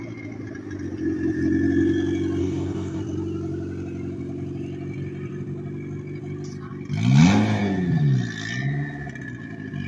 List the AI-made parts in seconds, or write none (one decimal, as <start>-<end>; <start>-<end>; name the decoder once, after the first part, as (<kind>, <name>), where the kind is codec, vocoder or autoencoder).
2.4-3.0 (codec, DAC)